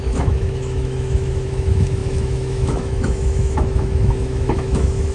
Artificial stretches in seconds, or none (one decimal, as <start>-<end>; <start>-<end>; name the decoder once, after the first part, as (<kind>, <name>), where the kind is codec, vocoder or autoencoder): 0.0-5.1 (autoencoder, DAC-VAE)